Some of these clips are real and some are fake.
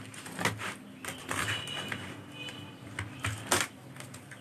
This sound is real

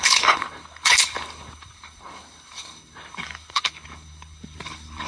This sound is fake